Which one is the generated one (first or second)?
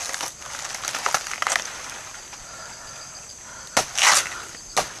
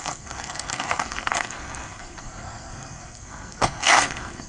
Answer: second